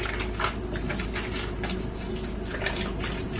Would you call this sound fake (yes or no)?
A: no